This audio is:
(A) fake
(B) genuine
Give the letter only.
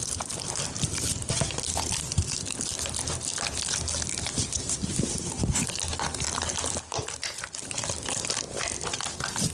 B